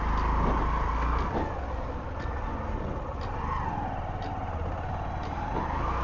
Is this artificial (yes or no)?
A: no